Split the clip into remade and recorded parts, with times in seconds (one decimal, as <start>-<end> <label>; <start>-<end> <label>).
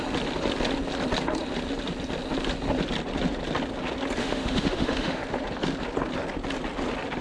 0.0-4.2 recorded; 4.2-5.2 remade; 5.2-7.2 recorded